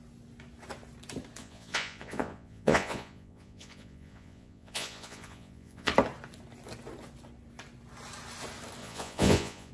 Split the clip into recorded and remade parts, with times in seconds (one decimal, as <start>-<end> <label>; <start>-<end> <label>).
0.0-1.4 recorded; 1.4-5.9 remade; 5.9-8.8 recorded; 8.8-9.7 remade